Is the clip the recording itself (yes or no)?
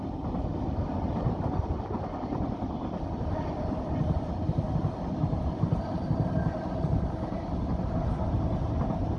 yes